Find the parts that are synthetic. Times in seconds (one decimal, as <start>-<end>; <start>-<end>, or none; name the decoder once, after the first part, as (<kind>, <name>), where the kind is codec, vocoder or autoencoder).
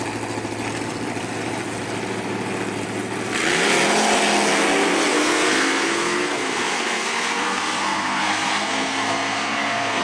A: 5.1-10.0 (codec, SNAC)